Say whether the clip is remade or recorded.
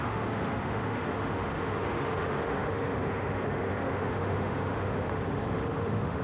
remade